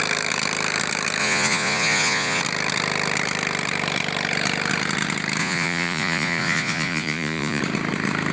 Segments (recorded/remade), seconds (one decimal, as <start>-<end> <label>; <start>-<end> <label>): 0.0-1.2 recorded; 1.2-2.4 remade; 2.4-5.4 recorded; 5.4-7.6 remade; 7.6-8.3 recorded